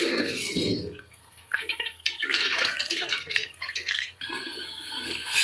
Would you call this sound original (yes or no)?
no